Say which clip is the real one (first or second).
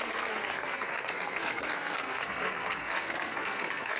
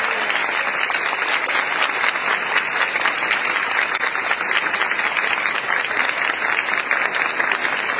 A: second